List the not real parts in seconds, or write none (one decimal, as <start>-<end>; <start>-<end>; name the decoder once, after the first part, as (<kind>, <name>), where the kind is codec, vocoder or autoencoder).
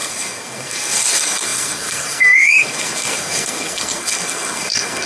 0.0-5.1 (codec, SNAC)